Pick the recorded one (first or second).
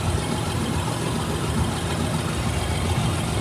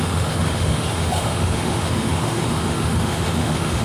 first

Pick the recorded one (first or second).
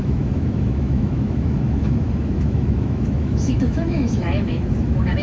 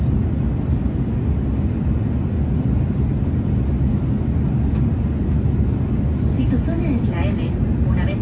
second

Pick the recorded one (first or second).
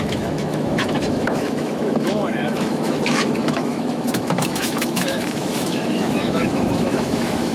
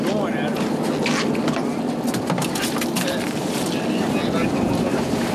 second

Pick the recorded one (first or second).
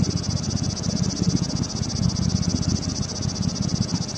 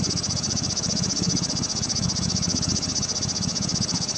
first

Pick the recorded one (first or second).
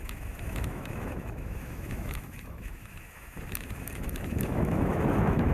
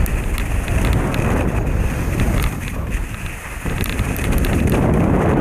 second